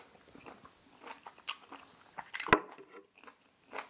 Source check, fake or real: real